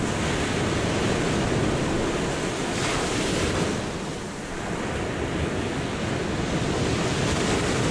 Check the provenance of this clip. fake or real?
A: real